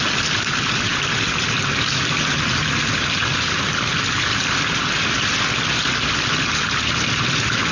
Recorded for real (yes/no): yes